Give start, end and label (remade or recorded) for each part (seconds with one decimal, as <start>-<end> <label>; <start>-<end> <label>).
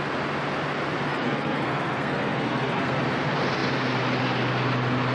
0.0-1.1 recorded; 1.1-3.0 remade; 3.0-5.1 recorded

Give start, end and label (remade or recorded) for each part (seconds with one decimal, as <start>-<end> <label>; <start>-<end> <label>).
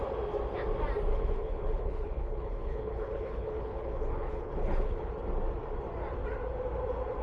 0.0-1.1 recorded; 1.1-5.1 remade; 5.1-7.2 recorded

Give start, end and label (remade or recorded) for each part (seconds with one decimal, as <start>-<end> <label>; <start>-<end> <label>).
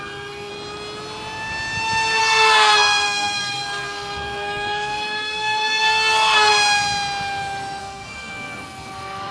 0.0-0.5 remade; 0.5-2.2 recorded; 2.2-6.5 remade; 6.5-7.8 recorded; 7.8-9.3 remade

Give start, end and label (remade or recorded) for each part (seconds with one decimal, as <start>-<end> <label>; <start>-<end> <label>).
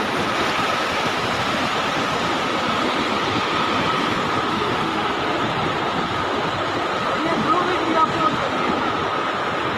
0.0-4.5 recorded; 4.5-5.1 remade; 5.1-9.8 recorded